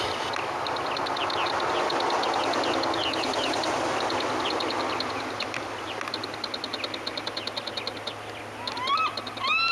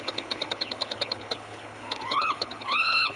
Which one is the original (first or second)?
first